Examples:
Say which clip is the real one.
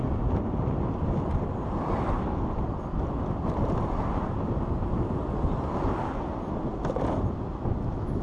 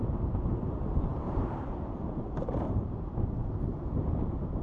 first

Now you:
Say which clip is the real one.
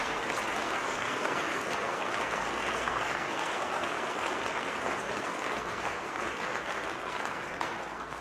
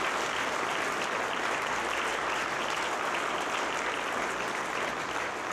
second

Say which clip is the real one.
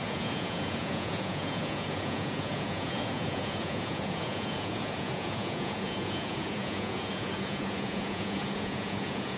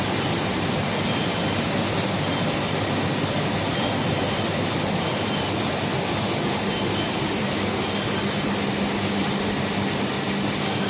second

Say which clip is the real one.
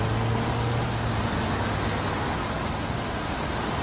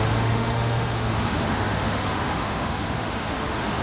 first